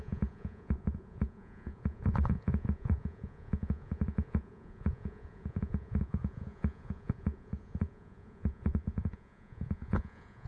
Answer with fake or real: fake